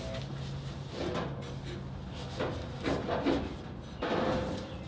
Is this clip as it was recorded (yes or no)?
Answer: yes